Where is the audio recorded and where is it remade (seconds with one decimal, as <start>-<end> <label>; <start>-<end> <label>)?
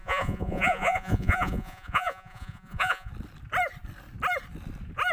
0.0-3.1 remade; 3.1-5.1 recorded